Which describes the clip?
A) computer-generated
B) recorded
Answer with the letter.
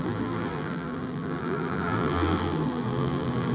A